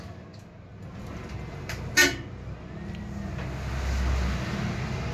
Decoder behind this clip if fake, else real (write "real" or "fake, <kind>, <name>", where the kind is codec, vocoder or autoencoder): real